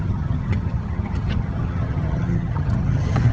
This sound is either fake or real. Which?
fake